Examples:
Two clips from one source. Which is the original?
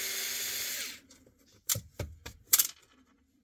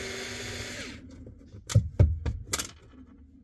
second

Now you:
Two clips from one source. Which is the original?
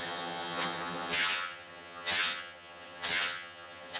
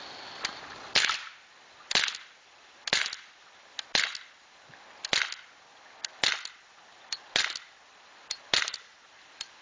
second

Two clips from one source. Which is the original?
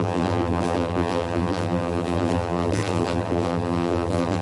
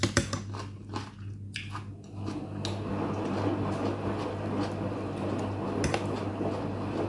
second